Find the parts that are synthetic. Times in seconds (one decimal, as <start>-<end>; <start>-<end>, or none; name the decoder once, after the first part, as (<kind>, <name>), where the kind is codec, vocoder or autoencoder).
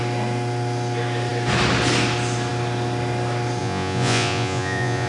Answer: 3.6-5.1 (vocoder, Vocos)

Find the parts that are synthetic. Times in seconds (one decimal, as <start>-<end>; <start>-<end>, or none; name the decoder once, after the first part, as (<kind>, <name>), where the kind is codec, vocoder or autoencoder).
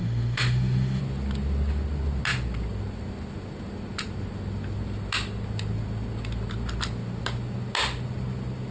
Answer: 0.0-1.0 (autoencoder, DAC-VAE)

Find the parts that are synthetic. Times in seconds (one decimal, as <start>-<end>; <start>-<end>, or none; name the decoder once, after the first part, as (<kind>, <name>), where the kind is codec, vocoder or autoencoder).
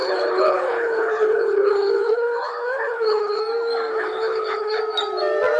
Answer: 0.0-3.4 (codec, HILCodec); 3.9-4.8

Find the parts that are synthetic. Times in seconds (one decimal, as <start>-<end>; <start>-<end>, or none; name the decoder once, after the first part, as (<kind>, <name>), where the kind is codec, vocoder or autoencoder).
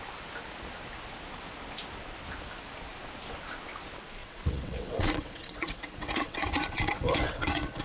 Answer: 4.2-7.8 (vocoder, WaveNeXt)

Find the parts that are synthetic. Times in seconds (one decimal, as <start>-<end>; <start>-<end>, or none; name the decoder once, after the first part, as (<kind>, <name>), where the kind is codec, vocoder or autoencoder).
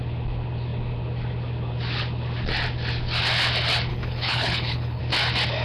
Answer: 3.9-5.0 (codec, HILCodec)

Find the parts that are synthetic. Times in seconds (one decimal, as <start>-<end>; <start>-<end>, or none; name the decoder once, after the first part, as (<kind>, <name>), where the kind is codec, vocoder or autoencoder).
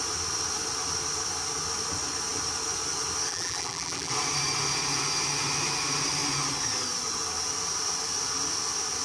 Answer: 3.3-4.1 (vocoder, BigVGAN v2)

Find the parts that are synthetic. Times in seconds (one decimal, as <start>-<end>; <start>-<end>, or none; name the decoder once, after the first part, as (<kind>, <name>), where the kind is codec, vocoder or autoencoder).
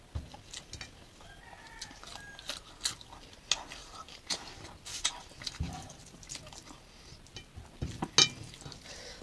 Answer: 3.8-4.4 (vocoder, BigVGAN v2); 4.9-6.0